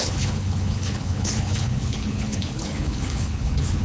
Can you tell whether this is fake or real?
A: fake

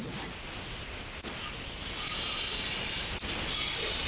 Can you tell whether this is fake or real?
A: real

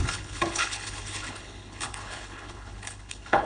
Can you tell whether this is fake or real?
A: fake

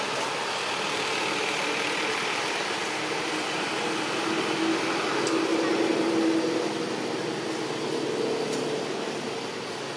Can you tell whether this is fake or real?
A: real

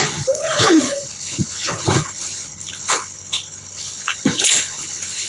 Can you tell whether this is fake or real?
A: fake